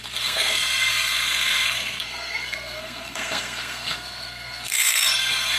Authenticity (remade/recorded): remade